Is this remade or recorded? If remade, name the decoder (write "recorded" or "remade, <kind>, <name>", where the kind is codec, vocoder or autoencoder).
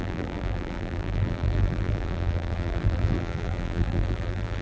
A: remade, vocoder, BigVGAN v2